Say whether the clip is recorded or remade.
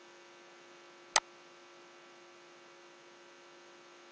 recorded